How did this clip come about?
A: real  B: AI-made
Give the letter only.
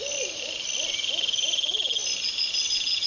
A